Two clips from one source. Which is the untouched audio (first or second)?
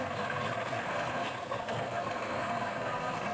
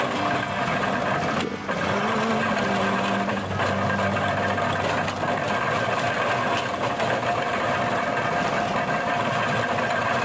second